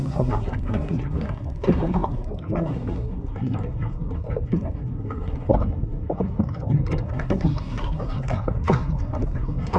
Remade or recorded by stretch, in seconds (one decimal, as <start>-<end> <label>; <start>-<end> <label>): 0.0-9.8 remade